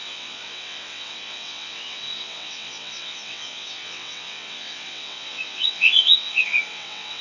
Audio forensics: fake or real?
fake